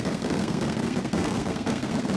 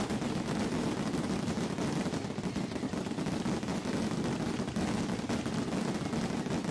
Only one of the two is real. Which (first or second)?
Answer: second